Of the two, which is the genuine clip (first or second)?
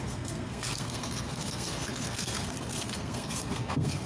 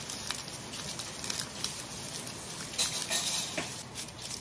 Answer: second